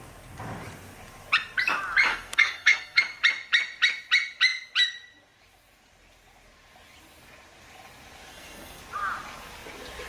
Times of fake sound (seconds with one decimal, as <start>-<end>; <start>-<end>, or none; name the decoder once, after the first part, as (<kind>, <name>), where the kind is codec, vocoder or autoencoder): 2.1-3.0 (codec, SNAC); 8.3-8.8